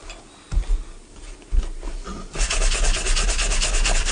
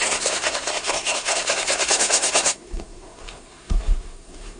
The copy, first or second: second